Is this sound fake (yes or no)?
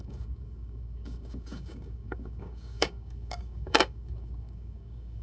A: yes